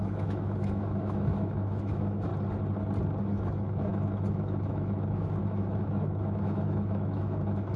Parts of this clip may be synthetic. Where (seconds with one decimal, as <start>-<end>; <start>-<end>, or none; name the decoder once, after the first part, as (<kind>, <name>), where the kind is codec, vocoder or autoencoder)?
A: 0.0-2.3 (autoencoder, DAC-VAE); 3.2-7.8